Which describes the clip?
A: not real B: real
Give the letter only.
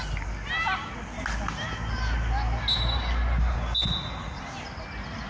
B